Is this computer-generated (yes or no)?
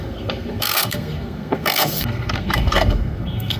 yes